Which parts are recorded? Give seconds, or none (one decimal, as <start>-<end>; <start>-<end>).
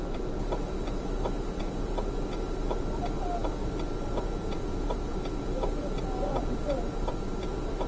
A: 0.0-7.9